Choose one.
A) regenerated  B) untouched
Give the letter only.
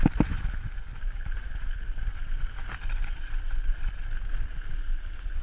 B